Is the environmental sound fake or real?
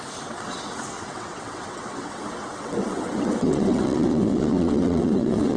fake